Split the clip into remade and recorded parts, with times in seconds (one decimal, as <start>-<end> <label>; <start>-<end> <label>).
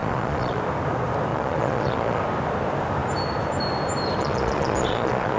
0.0-0.6 remade; 0.6-1.3 recorded; 1.3-2.2 remade; 2.2-4.2 recorded; 4.2-5.4 remade